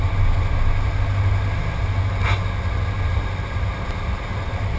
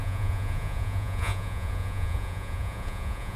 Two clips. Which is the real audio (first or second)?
first